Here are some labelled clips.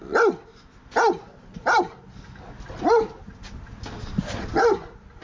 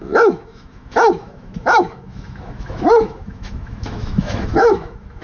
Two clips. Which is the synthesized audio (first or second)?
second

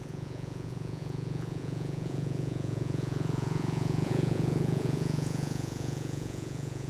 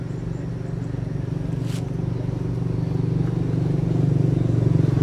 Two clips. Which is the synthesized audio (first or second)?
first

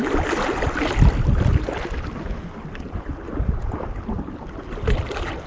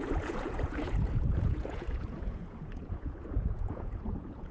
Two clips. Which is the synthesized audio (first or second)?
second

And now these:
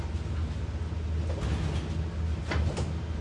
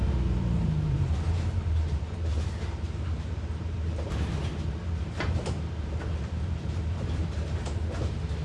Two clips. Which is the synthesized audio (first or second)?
second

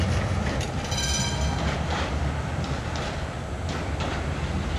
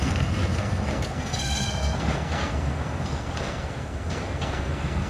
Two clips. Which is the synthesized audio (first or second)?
second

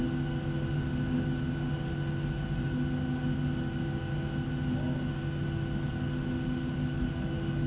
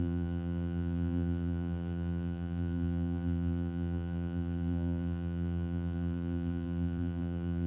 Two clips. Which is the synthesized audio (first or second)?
second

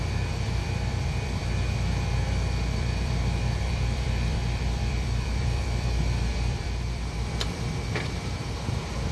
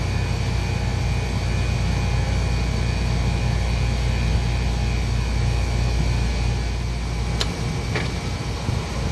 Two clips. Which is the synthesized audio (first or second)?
first